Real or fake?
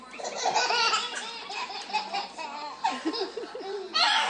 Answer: real